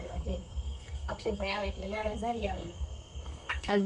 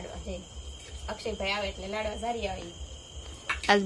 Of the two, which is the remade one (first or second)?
first